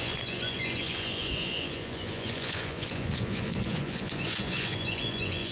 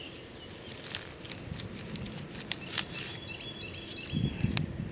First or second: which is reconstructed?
first